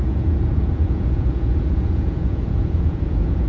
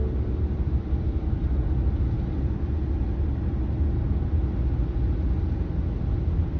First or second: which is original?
second